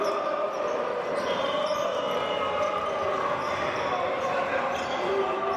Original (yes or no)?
yes